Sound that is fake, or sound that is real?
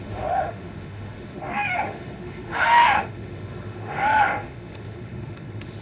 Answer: fake